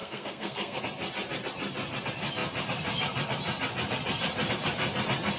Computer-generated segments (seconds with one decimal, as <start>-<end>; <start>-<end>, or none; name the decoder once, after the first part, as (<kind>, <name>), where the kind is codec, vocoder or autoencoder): 0.0-0.8 (codec, SNAC)